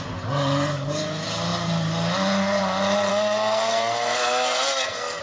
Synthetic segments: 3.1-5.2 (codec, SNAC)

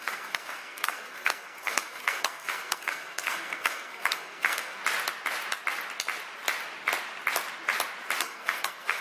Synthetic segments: 0.0-4.8 (codec, SNAC); 8.2-9.0

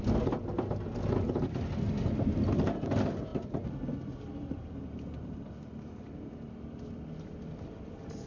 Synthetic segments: none

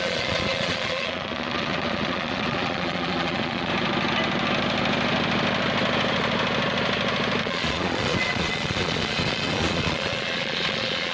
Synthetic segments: 0.0-3.7 (vocoder, Vocos); 7.4-11.1

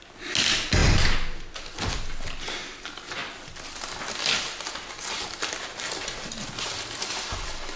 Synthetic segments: none

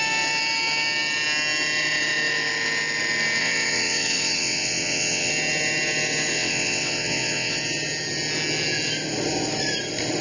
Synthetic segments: 3.4-5.3 (vocoder, WaveNeXt); 6.3-7.6

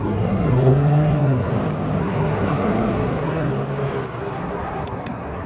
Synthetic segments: 0.0-1.5 (codec, SNAC); 2.0-3.5; 4.2-5.5

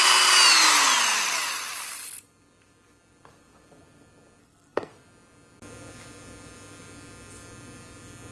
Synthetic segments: 4.4-4.9 (codec, SNAC)